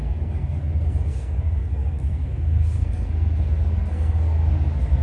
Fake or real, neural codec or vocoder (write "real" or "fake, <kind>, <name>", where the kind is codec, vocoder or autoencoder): fake, codec, SNAC